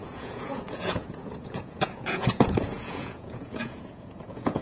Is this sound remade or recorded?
remade